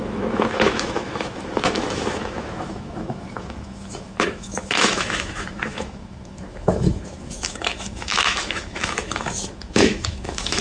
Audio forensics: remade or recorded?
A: remade